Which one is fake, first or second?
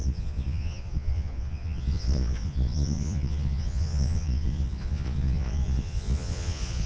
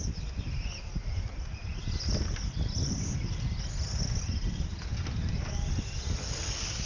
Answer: first